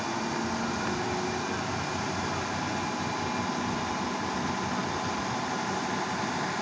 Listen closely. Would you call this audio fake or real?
real